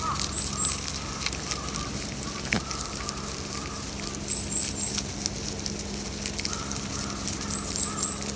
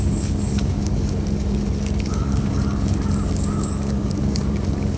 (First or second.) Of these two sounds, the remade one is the second